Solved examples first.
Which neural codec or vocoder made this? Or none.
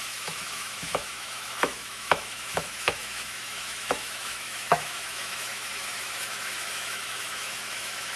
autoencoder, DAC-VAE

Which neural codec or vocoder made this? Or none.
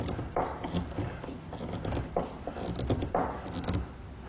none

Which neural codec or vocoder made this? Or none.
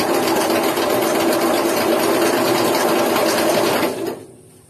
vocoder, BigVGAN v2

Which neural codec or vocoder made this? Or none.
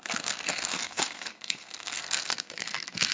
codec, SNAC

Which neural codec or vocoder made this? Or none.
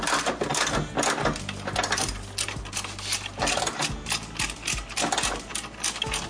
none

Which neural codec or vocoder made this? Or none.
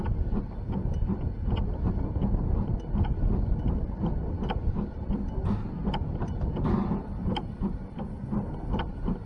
none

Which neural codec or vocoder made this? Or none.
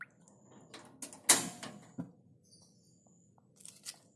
none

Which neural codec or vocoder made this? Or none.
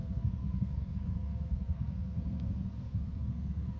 codec, SNAC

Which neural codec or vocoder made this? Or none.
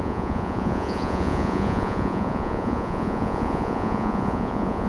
vocoder, Vocos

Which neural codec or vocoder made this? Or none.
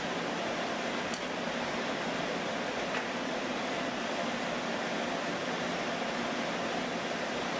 none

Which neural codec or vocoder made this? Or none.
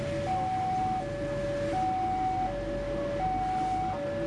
none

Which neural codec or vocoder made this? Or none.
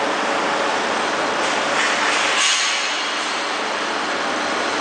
none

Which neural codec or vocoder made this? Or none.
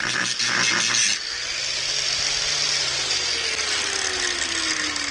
none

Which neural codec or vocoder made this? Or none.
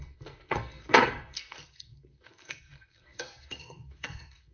codec, SNAC